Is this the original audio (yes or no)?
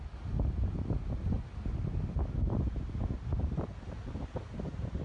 yes